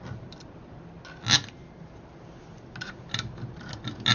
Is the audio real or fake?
real